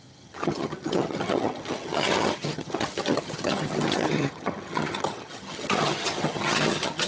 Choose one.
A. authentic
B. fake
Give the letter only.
B